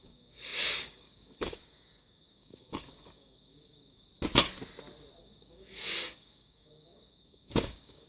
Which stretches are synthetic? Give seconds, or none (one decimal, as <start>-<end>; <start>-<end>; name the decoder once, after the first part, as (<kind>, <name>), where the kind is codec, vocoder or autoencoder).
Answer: 0.0-4.1 (codec, DAC); 5.2-8.1